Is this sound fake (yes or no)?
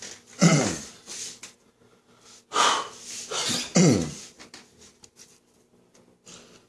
no